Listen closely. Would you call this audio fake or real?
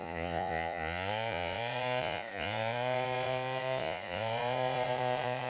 fake